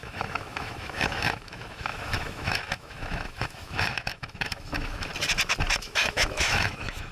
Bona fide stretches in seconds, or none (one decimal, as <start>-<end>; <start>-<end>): 5.1-5.8